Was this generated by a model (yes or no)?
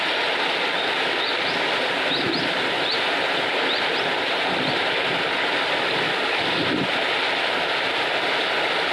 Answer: no